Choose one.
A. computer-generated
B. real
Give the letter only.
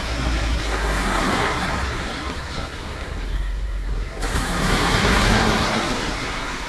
A